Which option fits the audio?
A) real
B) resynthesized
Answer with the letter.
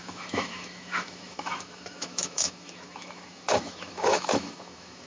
B